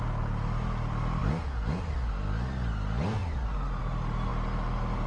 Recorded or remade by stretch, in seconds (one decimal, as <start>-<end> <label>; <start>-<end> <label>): 0.0-5.1 recorded